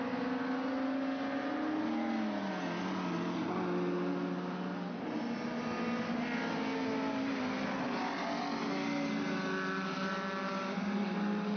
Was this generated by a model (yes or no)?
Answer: no